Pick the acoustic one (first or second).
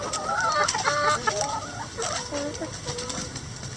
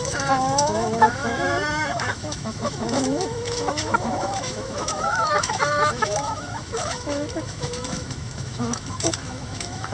first